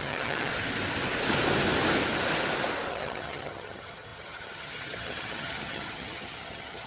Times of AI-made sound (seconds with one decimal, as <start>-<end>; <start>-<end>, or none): 0.0-0.5; 2.9-6.9